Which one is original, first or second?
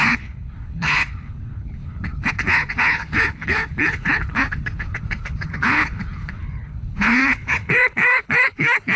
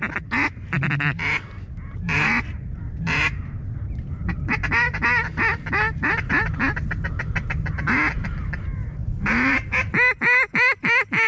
second